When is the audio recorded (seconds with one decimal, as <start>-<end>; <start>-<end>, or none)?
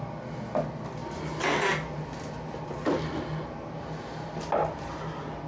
0.0-5.5